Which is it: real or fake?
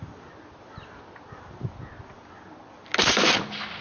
real